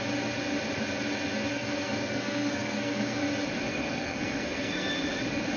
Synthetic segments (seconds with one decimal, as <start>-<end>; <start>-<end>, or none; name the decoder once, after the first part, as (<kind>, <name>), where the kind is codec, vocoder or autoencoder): 1.5-3.2 (codec, SNAC); 3.7-4.9